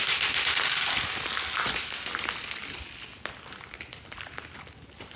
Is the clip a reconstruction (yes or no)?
yes